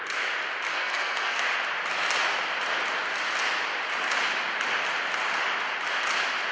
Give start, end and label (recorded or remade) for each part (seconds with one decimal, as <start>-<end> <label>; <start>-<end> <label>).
0.0-0.7 recorded; 0.7-1.4 remade; 1.4-6.5 recorded